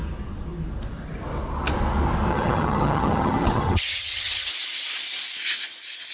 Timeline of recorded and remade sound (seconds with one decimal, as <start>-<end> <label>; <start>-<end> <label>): 0.0-2.3 recorded; 2.3-4.5 remade; 4.5-6.1 recorded